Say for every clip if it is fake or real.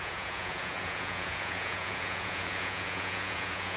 fake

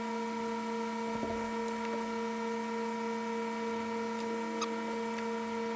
real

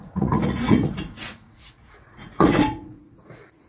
fake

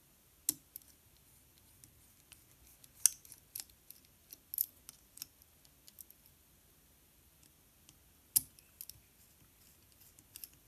real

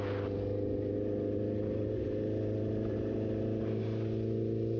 real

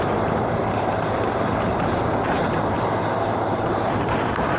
fake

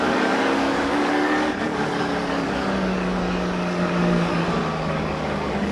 fake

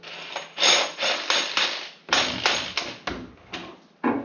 real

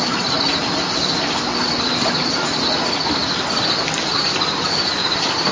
real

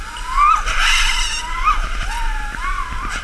real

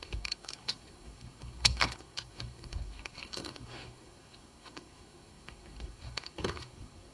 fake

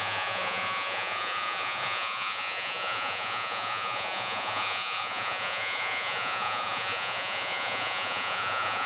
fake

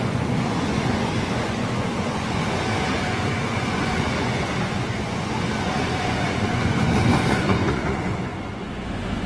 fake